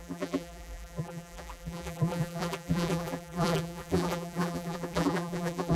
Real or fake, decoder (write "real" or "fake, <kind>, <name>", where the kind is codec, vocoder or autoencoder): fake, vocoder, BigVGAN v2